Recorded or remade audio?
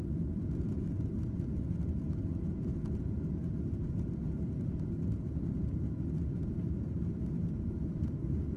recorded